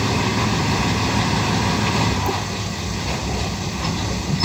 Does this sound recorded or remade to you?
recorded